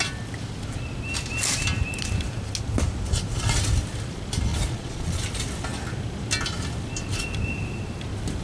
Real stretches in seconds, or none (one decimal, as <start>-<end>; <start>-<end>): 0.0-4.5; 5.2-8.4